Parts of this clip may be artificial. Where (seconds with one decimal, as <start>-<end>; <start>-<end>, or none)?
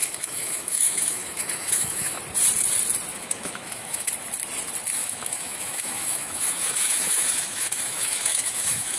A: 0.0-2.2; 3.1-4.1; 5.0-9.0